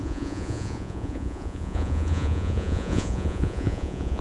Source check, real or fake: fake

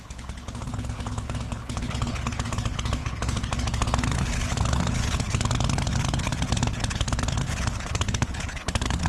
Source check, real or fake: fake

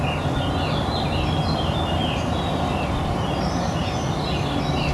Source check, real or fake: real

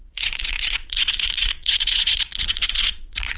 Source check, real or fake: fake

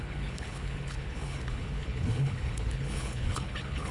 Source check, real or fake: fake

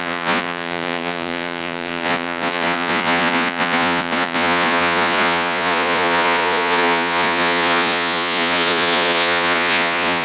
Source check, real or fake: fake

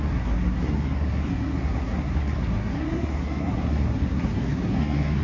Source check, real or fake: fake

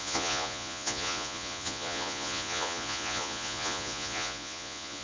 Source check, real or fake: fake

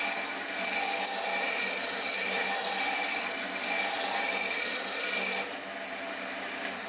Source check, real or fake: real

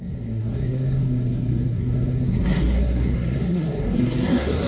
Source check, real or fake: fake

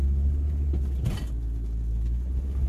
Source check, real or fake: real